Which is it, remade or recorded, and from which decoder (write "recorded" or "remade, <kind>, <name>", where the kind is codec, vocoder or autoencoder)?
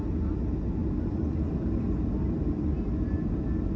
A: recorded